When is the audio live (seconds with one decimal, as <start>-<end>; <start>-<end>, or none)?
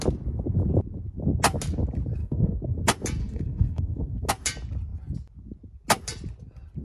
0.0-2.2; 2.8-3.2; 4.3-6.8